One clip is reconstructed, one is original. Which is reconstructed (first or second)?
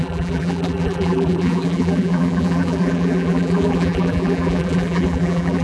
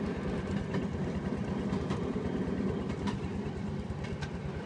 first